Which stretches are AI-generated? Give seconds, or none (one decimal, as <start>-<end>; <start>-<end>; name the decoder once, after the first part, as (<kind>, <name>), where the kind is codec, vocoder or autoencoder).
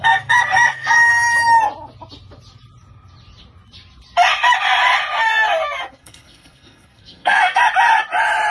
0.0-1.1 (codec, SNAC); 5.9-7.6